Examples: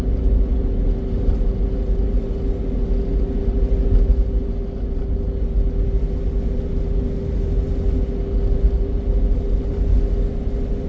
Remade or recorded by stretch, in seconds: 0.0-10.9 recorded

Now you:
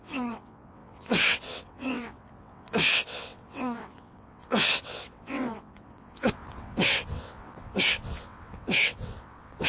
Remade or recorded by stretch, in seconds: 0.0-9.7 remade

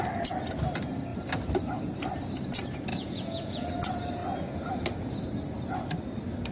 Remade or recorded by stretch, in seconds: 0.0-2.9 recorded; 2.9-3.7 remade; 3.7-6.5 recorded

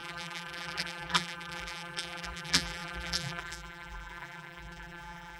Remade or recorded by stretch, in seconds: 0.0-5.4 remade

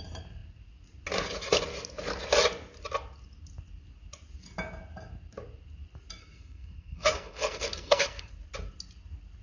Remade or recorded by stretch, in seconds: 0.0-6.2 recorded; 6.2-8.3 remade; 8.3-9.4 recorded

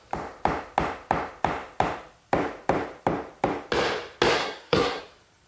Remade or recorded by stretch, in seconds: 0.0-4.4 recorded; 4.4-5.0 remade; 5.0-5.5 recorded

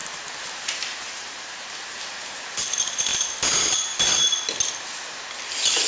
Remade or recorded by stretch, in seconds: 0.0-2.5 remade; 2.5-3.1 recorded; 3.1-3.8 remade; 3.8-5.9 recorded

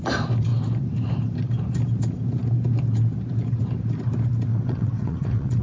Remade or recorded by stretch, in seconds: 0.0-4.5 recorded; 4.5-5.6 remade